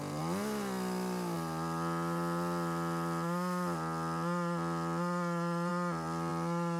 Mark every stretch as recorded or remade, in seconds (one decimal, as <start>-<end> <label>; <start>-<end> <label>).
0.0-6.8 recorded